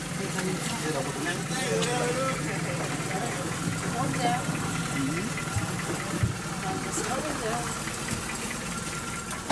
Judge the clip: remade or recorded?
recorded